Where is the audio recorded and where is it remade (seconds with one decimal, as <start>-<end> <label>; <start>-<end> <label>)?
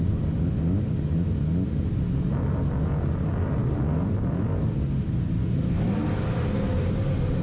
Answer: 0.0-3.6 recorded; 3.6-4.4 remade; 4.4-7.4 recorded